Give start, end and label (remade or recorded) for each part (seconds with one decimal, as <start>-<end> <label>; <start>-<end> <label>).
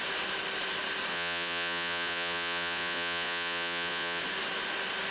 0.0-1.1 recorded; 1.1-4.2 remade; 4.2-5.1 recorded